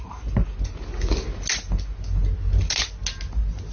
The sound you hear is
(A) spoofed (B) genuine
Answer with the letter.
B